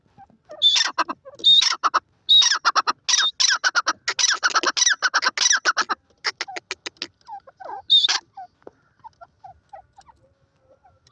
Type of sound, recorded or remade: recorded